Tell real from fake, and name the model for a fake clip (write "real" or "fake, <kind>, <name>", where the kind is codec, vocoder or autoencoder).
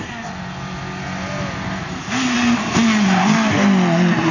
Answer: real